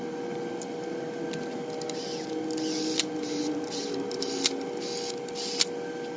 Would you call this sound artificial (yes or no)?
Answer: no